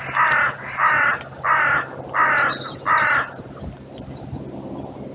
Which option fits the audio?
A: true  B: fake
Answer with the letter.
A